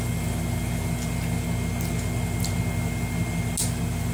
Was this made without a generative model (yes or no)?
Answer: yes